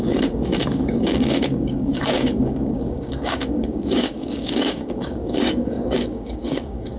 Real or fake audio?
fake